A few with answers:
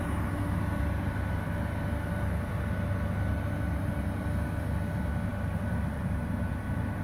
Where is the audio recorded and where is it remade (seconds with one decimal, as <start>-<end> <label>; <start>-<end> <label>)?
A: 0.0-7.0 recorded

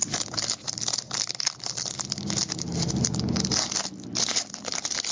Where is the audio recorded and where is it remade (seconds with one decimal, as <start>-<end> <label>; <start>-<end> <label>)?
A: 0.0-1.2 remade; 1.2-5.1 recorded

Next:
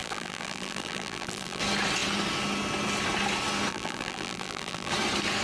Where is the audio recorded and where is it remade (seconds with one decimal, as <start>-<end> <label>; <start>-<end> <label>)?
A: 0.0-1.6 remade; 1.6-3.7 recorded; 3.7-4.9 remade; 4.9-5.4 recorded

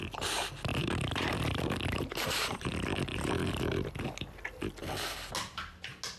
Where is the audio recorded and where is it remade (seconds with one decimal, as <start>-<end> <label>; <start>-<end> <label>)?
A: 0.0-0.7 recorded; 0.7-2.7 remade; 2.7-3.1 recorded; 3.1-3.9 remade; 3.9-6.2 recorded

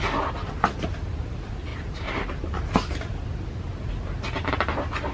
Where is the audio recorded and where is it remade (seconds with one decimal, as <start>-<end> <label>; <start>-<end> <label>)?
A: 0.0-1.7 recorded; 1.7-2.5 remade; 2.5-5.1 recorded